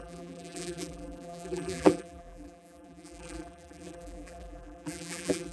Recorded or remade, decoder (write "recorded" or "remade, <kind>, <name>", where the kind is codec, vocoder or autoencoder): remade, vocoder, BigVGAN v2